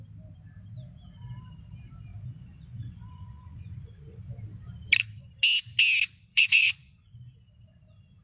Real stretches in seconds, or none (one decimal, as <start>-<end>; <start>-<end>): 0.0-2.1; 4.2-6.3; 7.3-8.2

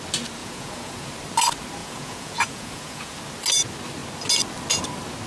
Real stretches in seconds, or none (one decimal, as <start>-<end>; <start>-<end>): 0.0-0.4; 1.1-1.8; 3.2-5.3

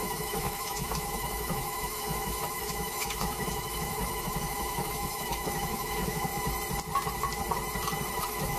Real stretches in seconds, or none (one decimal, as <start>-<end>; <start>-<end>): 6.3-8.2